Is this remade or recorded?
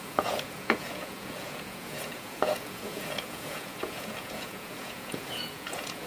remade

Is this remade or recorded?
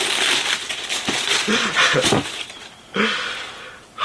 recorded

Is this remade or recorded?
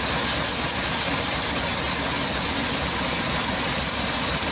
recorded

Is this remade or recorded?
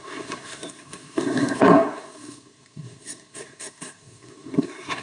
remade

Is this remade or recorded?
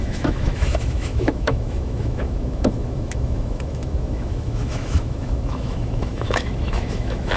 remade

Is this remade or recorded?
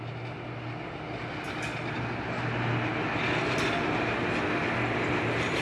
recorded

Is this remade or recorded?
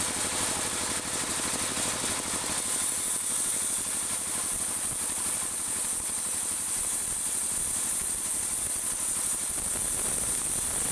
recorded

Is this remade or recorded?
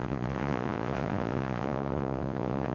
remade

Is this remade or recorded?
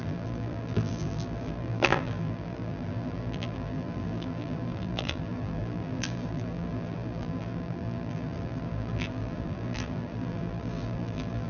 remade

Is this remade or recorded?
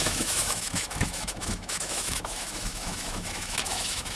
remade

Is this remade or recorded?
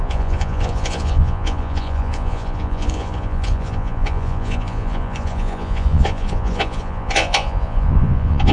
remade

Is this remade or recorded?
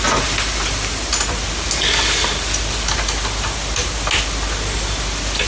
recorded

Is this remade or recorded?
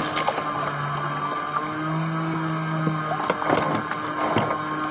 recorded